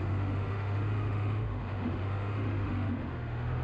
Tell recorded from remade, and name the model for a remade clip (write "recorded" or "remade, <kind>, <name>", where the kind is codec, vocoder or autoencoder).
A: remade, autoencoder, DAC-VAE